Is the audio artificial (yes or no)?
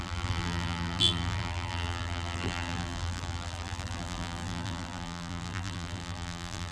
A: yes